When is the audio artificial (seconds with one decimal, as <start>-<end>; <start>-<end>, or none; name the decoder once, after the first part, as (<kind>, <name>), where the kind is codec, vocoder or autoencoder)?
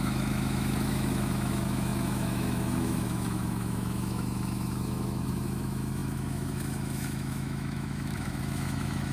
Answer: 0.0-9.1 (autoencoder, DAC-VAE)